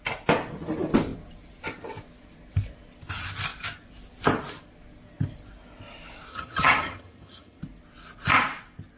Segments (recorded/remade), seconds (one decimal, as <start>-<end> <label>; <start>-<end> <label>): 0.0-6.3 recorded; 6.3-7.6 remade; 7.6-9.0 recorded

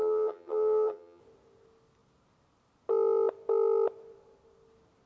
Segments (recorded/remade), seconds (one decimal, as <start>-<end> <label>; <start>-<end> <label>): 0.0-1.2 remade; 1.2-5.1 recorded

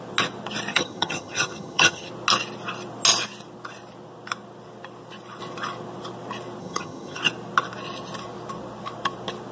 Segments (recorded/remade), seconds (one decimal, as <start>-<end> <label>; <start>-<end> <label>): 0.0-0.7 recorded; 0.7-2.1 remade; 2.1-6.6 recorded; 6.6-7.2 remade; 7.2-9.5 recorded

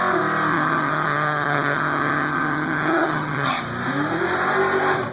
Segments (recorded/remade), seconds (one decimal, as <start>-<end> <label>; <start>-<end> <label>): 0.0-0.5 recorded; 0.5-3.6 remade; 3.6-5.1 recorded

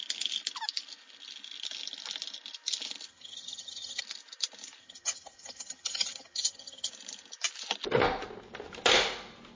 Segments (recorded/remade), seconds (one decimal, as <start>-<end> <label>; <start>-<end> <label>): 0.0-3.1 recorded; 3.1-4.0 remade; 4.0-4.8 recorded; 4.8-6.9 remade; 6.9-9.6 recorded

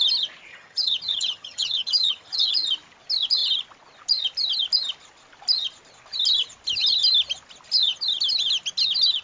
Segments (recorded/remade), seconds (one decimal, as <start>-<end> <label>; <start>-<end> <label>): 0.0-0.5 recorded; 0.5-2.5 remade; 2.5-9.2 recorded

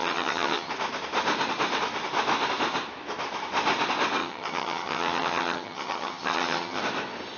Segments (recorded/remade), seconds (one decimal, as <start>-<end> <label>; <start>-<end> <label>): 0.0-0.7 remade; 0.7-4.2 recorded; 4.2-6.8 remade; 6.8-7.4 recorded

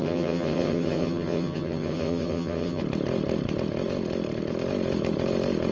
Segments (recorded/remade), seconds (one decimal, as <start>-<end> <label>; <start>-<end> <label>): 0.0-2.8 remade; 2.8-5.7 recorded